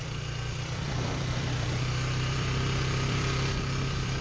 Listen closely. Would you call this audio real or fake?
fake